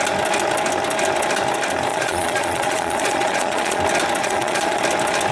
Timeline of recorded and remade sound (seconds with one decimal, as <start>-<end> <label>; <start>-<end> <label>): 0.0-1.9 recorded; 1.9-3.8 remade; 3.8-4.2 recorded; 4.2-4.8 remade; 4.8-5.3 recorded

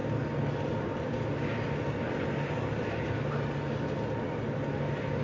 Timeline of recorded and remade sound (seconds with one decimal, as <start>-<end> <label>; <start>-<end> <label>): 0.0-5.2 recorded

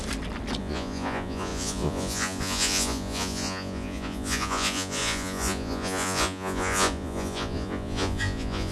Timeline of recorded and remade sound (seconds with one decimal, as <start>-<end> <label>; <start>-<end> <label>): 0.0-0.6 recorded; 0.6-8.7 remade

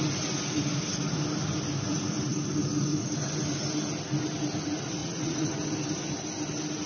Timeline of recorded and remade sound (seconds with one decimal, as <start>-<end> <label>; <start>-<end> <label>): 0.0-5.0 recorded; 5.0-5.5 remade; 5.5-6.9 recorded